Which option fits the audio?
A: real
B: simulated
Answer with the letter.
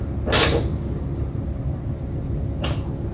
A